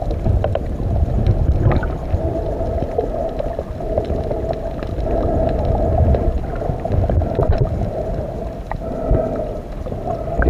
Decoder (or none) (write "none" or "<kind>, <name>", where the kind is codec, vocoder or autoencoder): none